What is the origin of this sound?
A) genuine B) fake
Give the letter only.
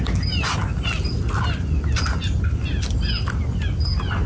A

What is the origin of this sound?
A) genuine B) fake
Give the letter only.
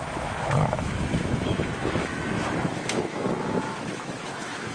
B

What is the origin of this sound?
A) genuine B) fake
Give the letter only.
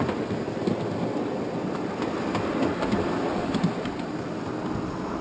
A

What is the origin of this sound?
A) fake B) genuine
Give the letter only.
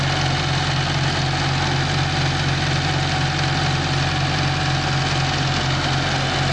B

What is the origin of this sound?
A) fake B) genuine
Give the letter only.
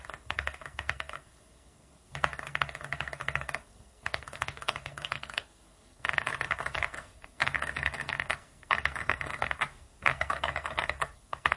A